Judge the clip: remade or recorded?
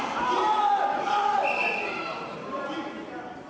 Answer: recorded